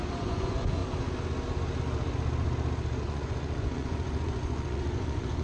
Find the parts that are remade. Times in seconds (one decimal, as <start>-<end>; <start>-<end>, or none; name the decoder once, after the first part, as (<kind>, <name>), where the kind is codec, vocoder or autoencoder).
0.0-0.8 (vocoder, Vocos); 3.0-5.4